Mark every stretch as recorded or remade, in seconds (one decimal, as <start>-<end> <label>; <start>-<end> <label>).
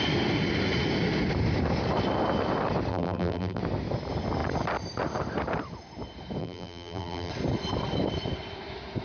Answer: 0.0-2.9 recorded; 2.9-3.6 remade; 3.6-6.4 recorded; 6.4-7.3 remade; 7.3-9.0 recorded